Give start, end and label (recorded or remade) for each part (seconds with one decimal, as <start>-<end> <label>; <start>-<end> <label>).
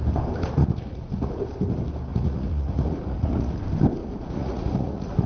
0.0-0.6 recorded; 0.6-1.4 remade; 1.4-2.1 recorded; 2.1-3.6 remade; 3.6-4.0 recorded; 4.0-5.3 remade